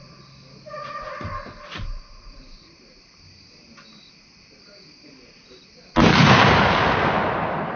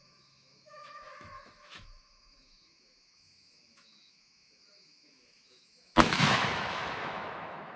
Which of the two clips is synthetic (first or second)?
second